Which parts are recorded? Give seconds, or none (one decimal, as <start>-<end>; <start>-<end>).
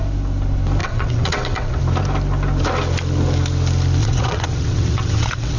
0.0-0.8; 1.8-4.0